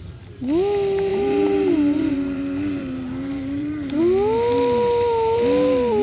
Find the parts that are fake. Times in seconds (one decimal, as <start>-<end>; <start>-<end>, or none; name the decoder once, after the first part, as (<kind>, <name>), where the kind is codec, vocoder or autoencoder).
1.1-4.0 (vocoder, BigVGAN v2)